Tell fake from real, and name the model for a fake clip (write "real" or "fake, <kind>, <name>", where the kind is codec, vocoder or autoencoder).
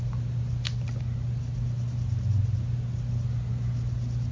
real